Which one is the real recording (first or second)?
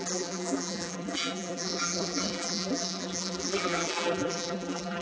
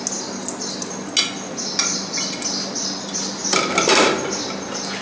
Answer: second